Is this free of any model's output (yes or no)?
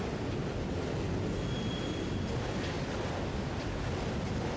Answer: yes